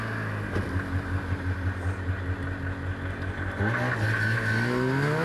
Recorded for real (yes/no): yes